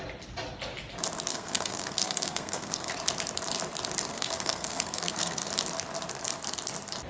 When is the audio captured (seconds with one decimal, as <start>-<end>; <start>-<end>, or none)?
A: 0.0-1.3; 2.9-4.1; 5.5-7.1